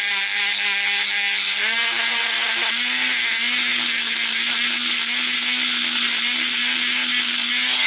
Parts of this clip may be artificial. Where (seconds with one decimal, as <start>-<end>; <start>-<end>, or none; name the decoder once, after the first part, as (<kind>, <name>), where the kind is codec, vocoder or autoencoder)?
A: none